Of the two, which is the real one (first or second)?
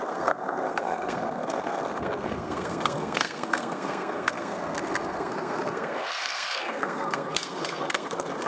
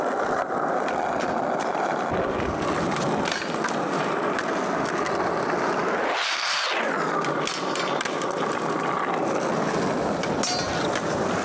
second